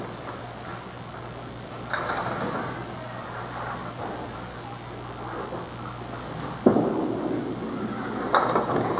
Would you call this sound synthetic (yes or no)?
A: no